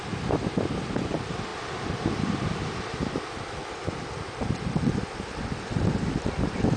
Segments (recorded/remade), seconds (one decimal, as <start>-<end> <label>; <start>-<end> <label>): 0.0-6.8 recorded